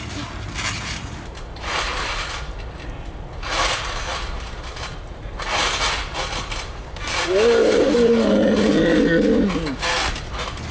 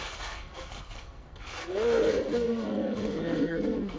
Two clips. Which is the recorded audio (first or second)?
first